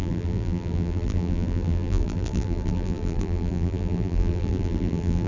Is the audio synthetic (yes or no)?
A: yes